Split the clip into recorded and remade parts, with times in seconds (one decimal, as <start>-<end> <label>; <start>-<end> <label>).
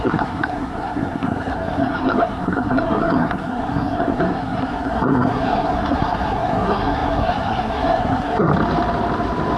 0.0-8.5 remade; 8.5-9.6 recorded